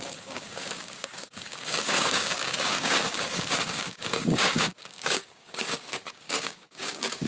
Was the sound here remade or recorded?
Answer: remade